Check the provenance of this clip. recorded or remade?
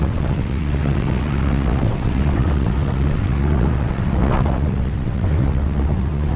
remade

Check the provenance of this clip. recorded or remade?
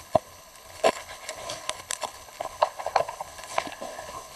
remade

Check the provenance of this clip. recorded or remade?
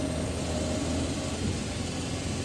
recorded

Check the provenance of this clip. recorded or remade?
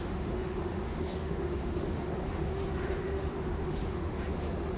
remade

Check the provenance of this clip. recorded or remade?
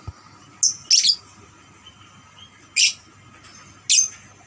recorded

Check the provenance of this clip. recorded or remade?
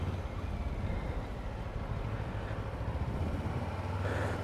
recorded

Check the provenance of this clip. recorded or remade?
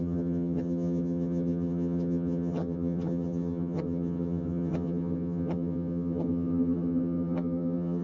remade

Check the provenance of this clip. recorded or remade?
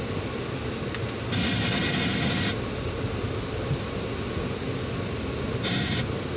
recorded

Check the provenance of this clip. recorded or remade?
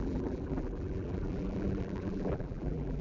remade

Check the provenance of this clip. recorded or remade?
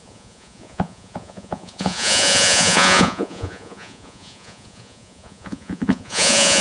remade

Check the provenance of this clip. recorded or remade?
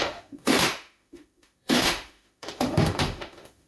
remade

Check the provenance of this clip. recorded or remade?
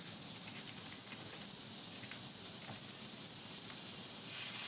recorded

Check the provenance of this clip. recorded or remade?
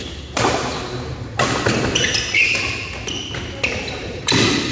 recorded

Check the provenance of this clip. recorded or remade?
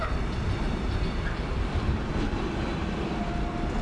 recorded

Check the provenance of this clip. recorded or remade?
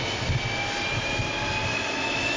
recorded